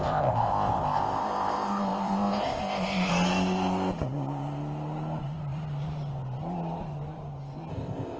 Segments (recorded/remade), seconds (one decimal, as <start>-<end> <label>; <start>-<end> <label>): 0.0-3.1 remade; 3.1-7.7 recorded; 7.7-8.2 remade